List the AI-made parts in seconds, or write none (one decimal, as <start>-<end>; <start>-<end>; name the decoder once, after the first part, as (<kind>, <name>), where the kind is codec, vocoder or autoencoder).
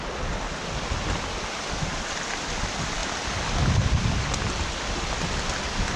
none